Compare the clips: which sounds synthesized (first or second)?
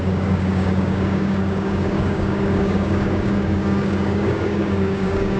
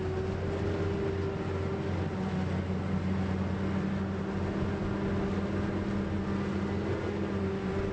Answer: first